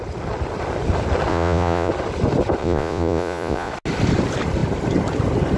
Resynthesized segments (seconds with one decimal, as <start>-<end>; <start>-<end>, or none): 1.3-1.9; 2.6-3.7